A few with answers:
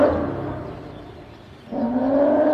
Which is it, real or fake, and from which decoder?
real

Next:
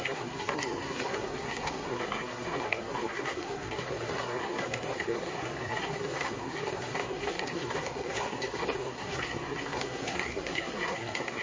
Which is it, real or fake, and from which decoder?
fake, codec, SNAC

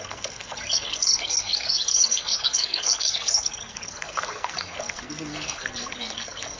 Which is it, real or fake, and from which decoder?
fake, codec, SNAC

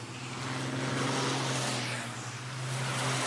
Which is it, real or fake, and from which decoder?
real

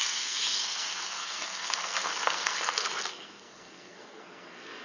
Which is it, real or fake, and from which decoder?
fake, codec, SNAC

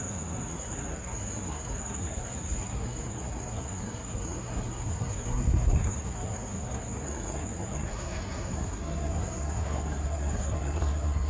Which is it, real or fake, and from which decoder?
fake, codec, SNAC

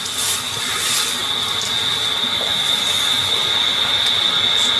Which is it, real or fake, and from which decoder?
real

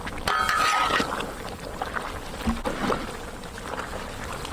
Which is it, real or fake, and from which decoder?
real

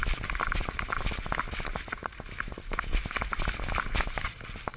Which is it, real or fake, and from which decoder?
real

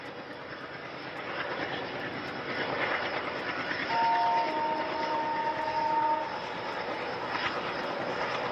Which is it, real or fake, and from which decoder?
real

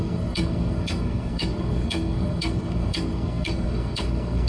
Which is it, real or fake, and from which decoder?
fake, codec, SNAC